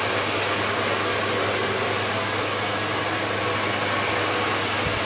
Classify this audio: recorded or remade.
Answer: recorded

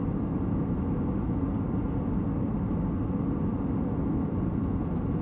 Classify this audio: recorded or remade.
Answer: recorded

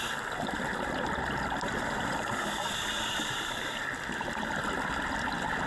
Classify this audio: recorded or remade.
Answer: recorded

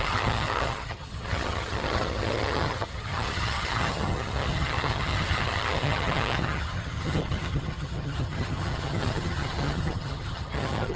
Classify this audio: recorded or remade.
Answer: remade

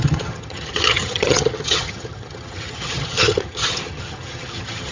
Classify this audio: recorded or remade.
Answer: remade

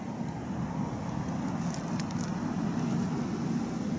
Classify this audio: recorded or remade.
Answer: recorded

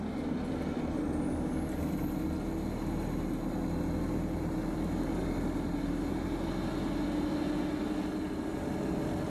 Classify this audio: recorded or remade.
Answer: recorded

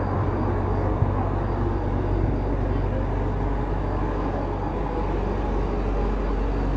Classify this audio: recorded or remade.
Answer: recorded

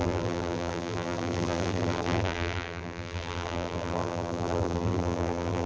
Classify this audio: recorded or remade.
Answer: remade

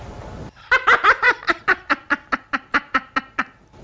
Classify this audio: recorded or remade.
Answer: recorded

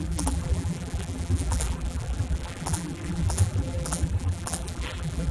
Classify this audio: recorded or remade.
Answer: remade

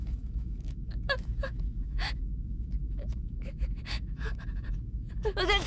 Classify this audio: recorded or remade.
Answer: remade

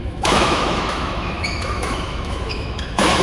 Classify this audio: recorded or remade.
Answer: remade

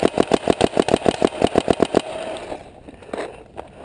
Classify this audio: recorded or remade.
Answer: recorded